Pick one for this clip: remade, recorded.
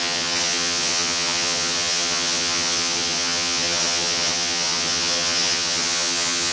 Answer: remade